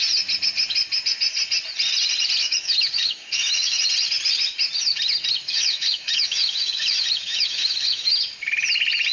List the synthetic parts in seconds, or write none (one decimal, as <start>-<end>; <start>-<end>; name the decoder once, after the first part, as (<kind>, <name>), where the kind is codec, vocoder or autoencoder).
2.4-3.8 (autoencoder, DAC-VAE); 5.4-8.1